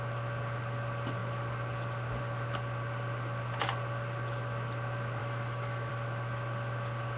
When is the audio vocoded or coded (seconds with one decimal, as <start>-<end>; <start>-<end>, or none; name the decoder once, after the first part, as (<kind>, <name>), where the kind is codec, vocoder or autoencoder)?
5.2-5.9 (autoencoder, DAC-VAE)